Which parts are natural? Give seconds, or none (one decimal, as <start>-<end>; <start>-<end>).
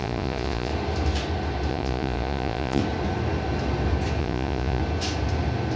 0.7-1.7; 2.8-4.2; 4.8-5.8